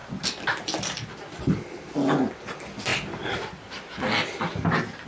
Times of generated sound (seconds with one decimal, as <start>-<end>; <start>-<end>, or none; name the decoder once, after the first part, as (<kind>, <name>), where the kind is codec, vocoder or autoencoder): none